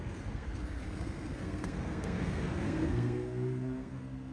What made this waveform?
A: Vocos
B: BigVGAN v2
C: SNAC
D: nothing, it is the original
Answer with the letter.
C